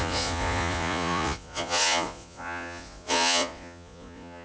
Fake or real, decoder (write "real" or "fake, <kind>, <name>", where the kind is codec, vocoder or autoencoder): fake, vocoder, Vocos